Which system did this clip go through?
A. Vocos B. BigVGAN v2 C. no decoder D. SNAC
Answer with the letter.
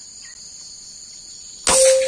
C